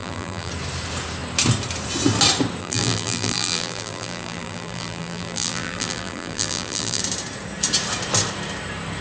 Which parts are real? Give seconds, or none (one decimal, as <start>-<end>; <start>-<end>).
0.5-2.6; 7.0-9.0